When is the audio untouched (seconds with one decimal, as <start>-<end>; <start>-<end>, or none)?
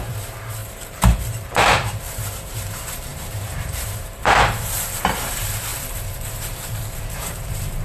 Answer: none